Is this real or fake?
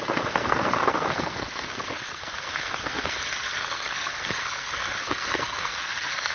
fake